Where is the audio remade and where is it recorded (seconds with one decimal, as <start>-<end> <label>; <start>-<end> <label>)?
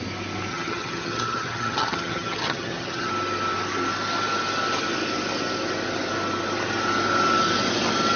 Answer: 0.0-0.5 recorded; 0.5-3.1 remade; 3.1-8.2 recorded